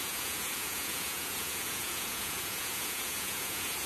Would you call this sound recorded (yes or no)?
no